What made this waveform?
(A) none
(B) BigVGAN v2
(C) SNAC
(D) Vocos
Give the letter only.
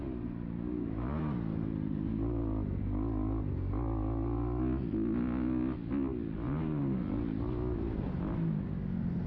A